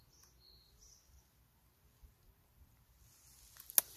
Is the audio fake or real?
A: real